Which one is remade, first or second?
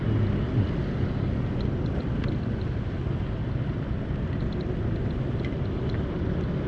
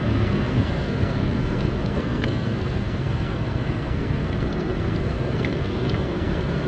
second